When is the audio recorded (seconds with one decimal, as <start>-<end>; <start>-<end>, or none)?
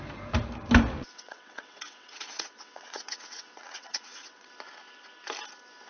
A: 0.0-1.0; 4.5-5.9